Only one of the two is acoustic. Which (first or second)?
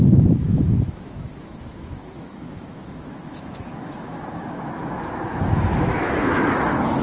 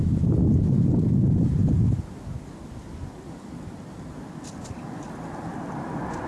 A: second